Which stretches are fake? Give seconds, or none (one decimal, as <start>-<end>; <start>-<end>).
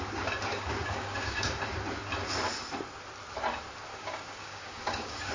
0.5-1.5; 3.9-5.3